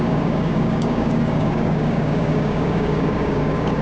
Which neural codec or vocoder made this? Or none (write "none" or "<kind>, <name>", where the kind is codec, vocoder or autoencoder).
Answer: codec, DAC